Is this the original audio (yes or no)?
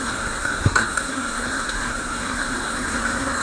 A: no